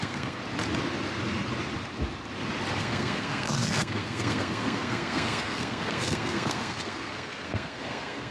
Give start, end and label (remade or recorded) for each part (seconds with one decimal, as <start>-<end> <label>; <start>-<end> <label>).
0.0-0.4 remade; 0.4-2.8 recorded; 2.8-8.3 remade